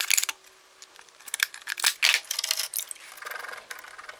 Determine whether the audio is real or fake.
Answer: real